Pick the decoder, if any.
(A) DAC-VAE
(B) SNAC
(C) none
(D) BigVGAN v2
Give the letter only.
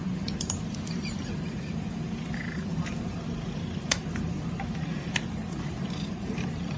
D